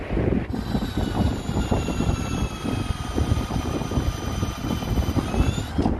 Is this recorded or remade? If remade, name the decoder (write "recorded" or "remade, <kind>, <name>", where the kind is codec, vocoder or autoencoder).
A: recorded